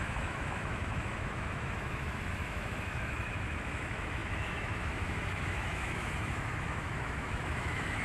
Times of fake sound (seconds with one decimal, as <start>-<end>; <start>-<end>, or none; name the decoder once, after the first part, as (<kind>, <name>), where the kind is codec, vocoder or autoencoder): 0.0-8.0 (autoencoder, DAC-VAE)